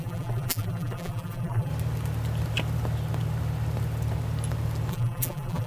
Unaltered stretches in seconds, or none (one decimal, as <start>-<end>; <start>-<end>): 1.7-4.9